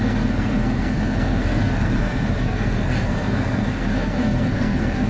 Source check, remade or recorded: remade